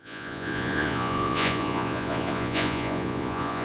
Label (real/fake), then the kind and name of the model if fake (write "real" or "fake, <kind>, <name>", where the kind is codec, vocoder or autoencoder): fake, vocoder, Vocos